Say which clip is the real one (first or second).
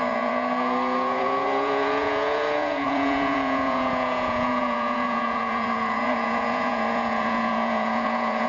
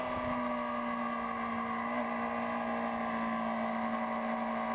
second